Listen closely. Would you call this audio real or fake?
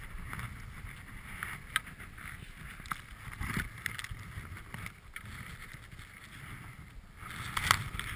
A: real